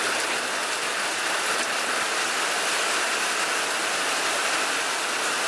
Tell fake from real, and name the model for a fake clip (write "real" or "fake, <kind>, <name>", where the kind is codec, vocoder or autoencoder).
real